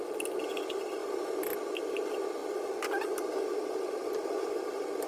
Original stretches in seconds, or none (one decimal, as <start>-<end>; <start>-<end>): 0.0-5.1